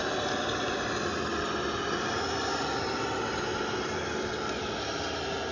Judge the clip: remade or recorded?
recorded